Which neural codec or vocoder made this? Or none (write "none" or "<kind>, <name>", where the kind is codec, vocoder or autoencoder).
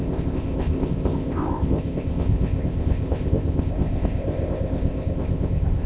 codec, ZipCodec